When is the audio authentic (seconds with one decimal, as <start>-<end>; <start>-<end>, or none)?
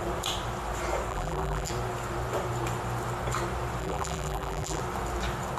0.0-1.1; 1.7-3.8; 4.8-5.6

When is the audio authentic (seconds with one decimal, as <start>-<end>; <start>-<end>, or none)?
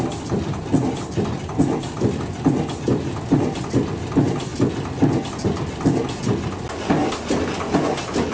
0.0-8.3